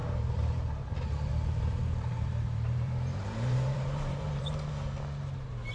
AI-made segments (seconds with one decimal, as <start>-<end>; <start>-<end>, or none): 0.0-0.6; 1.3-4.7